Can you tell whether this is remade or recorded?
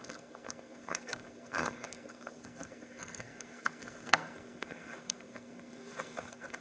remade